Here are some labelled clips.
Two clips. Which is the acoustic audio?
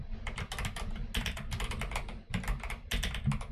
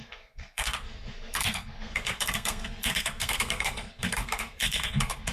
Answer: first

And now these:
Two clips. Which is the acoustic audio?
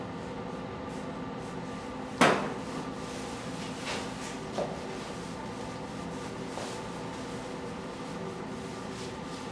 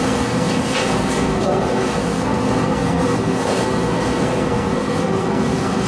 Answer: first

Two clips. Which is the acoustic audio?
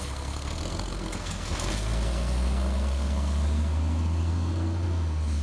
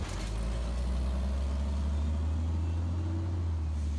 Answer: second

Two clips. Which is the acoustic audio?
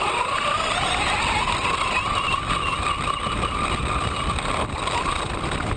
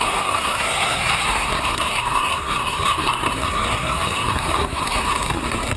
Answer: first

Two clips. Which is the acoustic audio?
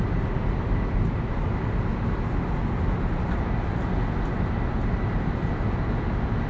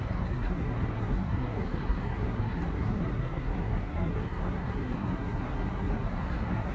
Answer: first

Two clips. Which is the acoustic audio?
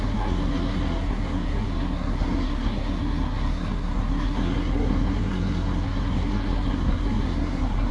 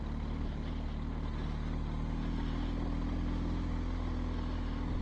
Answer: second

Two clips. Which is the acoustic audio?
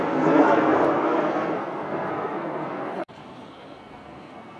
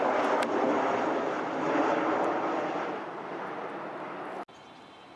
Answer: second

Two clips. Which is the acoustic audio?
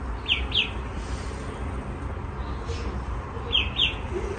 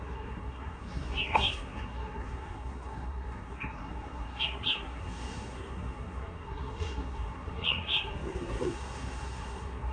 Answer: first